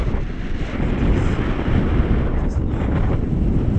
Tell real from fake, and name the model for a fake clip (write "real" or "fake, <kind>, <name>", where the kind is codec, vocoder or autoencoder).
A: real